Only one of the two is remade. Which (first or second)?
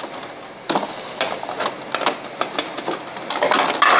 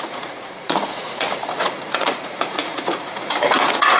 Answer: second